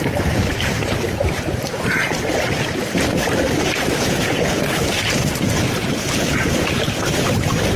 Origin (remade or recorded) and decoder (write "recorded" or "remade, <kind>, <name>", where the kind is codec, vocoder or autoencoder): remade, vocoder, BigVGAN v2